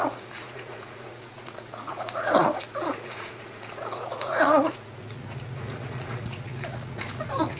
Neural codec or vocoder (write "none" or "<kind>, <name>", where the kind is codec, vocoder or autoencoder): vocoder, Vocos